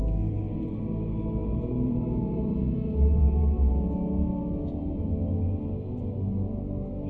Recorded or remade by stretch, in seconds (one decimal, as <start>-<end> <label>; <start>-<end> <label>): 0.0-1.4 recorded; 1.4-4.8 remade; 4.8-7.1 recorded